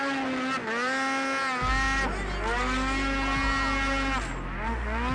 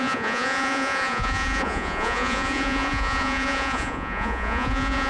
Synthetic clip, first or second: second